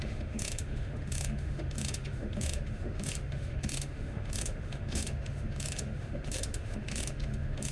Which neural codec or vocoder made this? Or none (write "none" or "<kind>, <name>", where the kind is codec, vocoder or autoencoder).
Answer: autoencoder, DAC-VAE